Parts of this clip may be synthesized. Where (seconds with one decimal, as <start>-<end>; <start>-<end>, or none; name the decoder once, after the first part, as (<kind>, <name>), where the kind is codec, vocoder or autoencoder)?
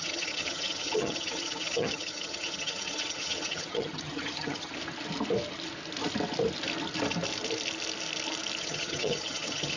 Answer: 0.0-4.7 (vocoder, HiFi-GAN); 8.6-9.8